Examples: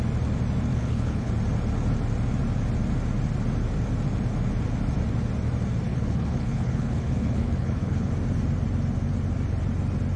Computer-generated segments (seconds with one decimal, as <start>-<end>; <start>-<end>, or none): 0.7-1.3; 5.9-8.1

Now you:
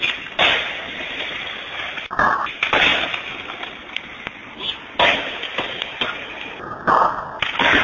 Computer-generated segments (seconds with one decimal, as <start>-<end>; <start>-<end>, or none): none

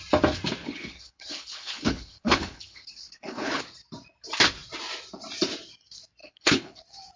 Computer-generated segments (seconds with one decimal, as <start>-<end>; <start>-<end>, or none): 0.6-3.6; 6.2-6.8

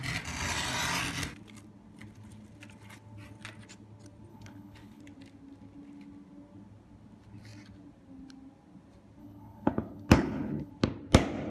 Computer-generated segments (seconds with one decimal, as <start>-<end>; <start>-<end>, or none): 4.3-5.0; 9.2-10.7